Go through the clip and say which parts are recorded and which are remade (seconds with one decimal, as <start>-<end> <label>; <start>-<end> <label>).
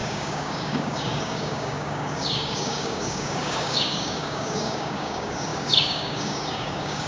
0.0-7.1 remade